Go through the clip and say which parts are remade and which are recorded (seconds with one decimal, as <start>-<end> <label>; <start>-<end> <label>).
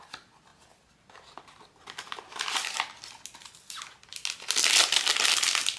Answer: 0.0-5.8 recorded